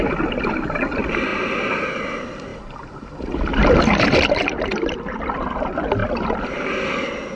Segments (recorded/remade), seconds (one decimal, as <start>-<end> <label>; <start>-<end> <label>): 0.0-2.5 recorded; 2.5-5.2 remade; 5.2-7.4 recorded